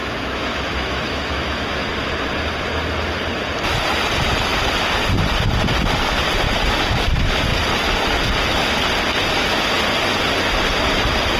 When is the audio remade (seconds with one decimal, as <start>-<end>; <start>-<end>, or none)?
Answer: 0.0-1.9